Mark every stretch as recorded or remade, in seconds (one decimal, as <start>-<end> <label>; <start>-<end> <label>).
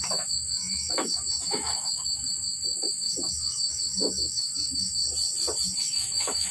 0.0-5.0 remade; 5.0-5.8 recorded; 5.8-6.5 remade